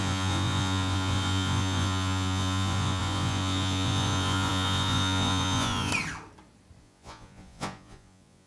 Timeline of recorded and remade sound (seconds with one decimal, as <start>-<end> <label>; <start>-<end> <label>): 0.0-5.9 remade; 5.9-6.8 recorded; 6.8-8.5 remade